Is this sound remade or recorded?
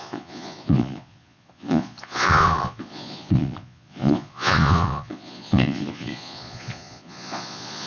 remade